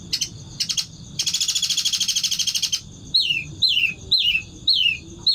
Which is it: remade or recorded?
recorded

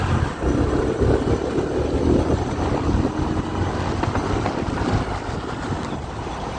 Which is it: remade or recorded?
recorded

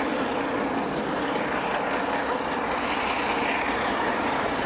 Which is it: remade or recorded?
recorded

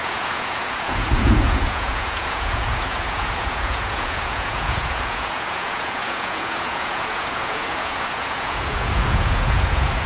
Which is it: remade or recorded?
remade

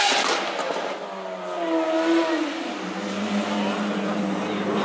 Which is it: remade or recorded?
recorded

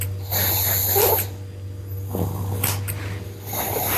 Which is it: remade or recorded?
recorded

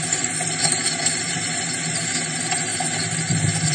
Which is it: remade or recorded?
recorded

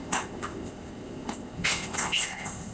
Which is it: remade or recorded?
remade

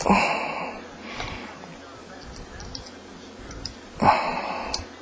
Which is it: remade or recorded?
recorded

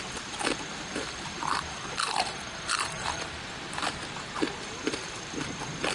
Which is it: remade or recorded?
remade